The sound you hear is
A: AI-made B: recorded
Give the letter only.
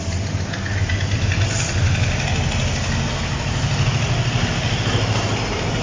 B